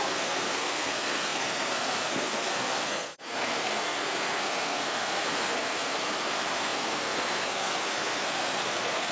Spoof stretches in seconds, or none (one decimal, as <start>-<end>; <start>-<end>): 0.0-9.1

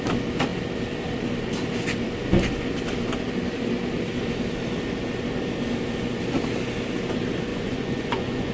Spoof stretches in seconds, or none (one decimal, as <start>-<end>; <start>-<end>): 7.5-8.5

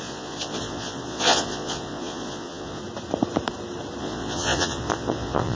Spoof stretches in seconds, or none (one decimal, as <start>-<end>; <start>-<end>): 0.0-2.8; 4.0-5.6